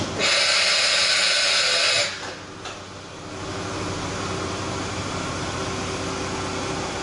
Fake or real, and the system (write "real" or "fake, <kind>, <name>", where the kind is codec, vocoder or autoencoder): real